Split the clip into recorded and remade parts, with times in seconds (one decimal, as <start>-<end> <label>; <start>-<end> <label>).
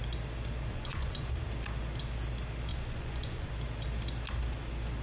0.0-0.7 recorded; 0.7-1.3 remade; 1.3-2.7 recorded; 2.7-3.5 remade; 3.5-5.0 recorded